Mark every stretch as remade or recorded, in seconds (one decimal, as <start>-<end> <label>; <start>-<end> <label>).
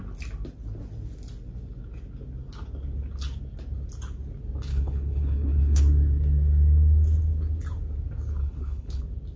0.0-4.7 recorded; 4.7-5.8 remade; 5.8-8.4 recorded; 8.4-9.0 remade; 9.0-9.4 recorded